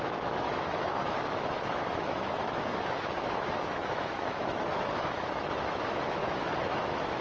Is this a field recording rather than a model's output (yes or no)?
no